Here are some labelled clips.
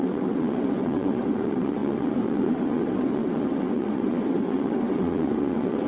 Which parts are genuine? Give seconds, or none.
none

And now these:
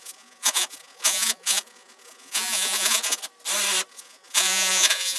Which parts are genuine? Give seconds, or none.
3.2-3.9